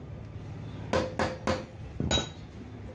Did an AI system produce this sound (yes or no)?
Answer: no